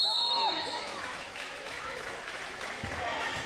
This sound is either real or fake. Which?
fake